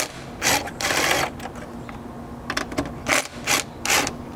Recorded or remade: recorded